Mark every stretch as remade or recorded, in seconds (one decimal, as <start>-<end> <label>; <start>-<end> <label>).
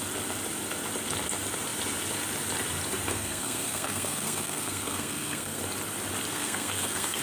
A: 0.0-3.1 recorded; 3.1-5.6 remade; 5.6-6.3 recorded; 6.3-7.2 remade